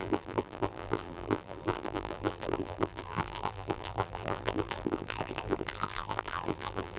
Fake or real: fake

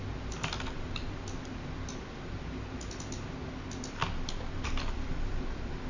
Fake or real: real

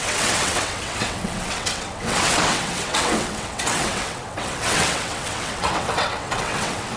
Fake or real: fake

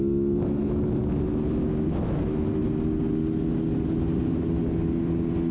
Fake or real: real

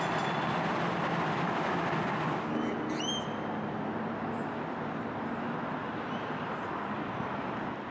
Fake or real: real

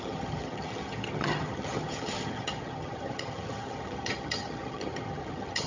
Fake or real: fake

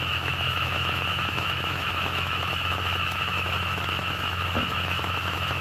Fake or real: fake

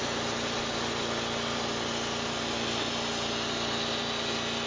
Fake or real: real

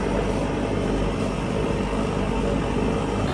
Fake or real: real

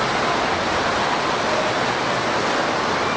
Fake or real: real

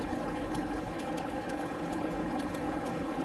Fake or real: fake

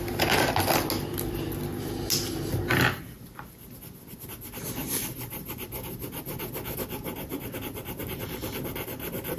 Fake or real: real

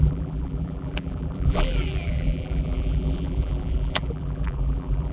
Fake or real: fake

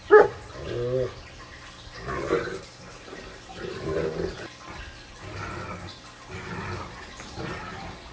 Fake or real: real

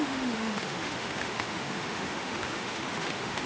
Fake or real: fake